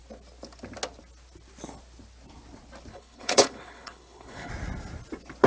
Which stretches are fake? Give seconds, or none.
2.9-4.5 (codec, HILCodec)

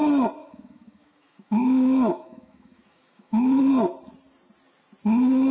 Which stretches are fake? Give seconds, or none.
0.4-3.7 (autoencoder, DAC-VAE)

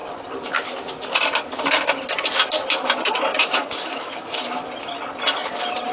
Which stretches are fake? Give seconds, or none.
3.6-4.4 (autoencoder, DAC-VAE)